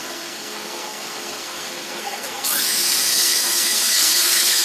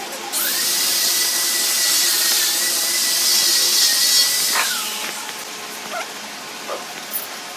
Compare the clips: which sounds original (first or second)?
second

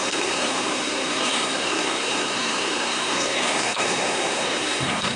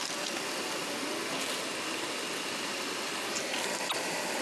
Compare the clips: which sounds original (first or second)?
second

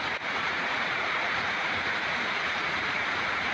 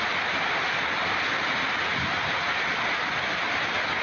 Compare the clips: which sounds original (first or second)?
second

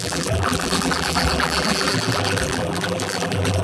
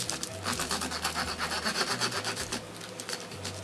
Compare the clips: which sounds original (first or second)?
second